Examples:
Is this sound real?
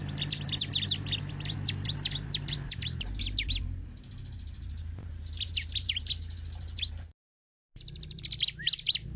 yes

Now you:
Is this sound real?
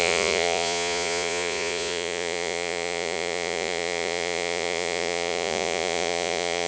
no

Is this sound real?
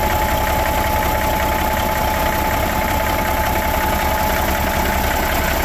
yes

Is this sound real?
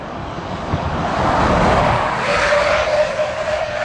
no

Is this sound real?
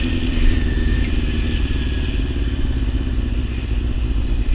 yes